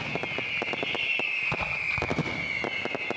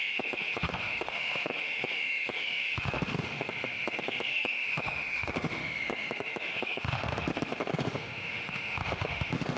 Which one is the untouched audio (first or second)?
first